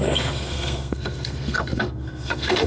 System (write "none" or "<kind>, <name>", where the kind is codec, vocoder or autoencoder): codec, SNAC